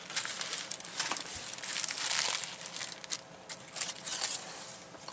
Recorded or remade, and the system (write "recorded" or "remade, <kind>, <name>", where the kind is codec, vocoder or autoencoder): recorded